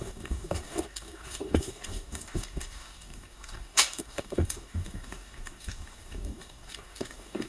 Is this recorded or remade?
remade